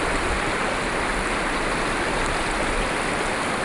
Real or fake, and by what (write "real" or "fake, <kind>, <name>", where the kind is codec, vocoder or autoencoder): real